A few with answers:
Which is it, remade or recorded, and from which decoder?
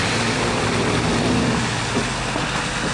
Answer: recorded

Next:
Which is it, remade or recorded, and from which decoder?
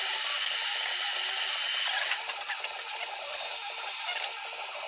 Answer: recorded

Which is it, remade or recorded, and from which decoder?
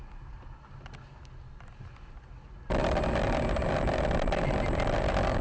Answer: recorded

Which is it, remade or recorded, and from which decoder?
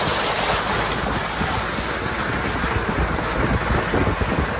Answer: recorded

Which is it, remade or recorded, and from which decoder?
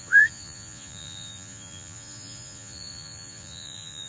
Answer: remade, vocoder, Vocos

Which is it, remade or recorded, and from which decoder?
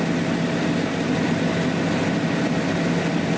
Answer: recorded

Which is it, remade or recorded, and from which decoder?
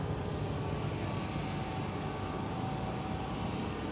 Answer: recorded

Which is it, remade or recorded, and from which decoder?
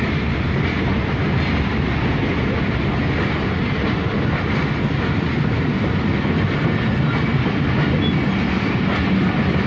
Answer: recorded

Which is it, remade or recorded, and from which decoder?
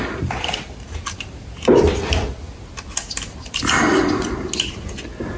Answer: recorded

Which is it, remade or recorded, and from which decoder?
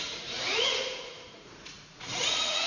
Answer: remade, vocoder, Vocos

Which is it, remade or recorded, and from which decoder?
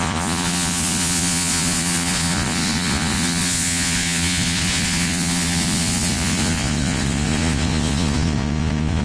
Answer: remade, vocoder, Vocos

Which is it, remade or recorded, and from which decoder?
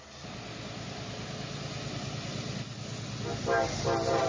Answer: recorded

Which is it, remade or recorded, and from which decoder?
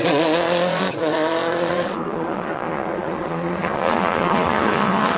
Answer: remade, vocoder, Vocos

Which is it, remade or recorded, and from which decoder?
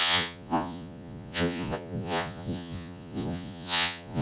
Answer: remade, vocoder, Vocos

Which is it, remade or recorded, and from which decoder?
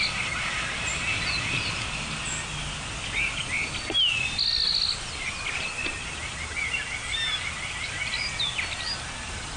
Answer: recorded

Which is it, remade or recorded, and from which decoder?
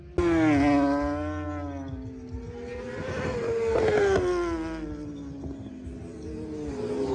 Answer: recorded